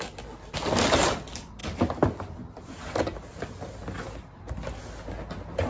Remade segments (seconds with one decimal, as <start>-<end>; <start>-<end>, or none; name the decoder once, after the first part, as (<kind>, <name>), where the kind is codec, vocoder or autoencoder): none